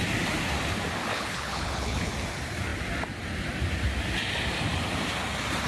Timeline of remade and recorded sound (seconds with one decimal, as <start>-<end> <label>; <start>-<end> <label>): 0.0-1.1 recorded; 1.1-2.1 remade; 2.1-5.7 recorded